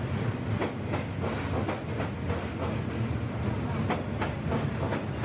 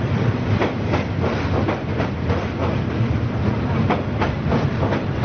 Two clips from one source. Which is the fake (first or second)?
second